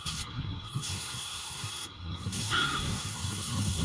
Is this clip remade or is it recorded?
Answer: remade